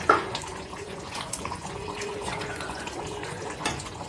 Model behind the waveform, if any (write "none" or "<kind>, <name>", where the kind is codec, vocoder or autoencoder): vocoder, Vocos